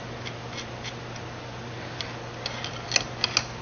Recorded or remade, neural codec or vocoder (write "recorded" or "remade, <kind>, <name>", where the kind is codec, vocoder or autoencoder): recorded